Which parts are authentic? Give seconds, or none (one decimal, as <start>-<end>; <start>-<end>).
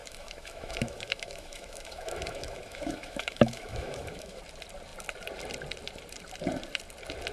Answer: 4.4-7.3